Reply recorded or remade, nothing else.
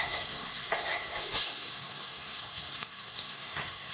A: remade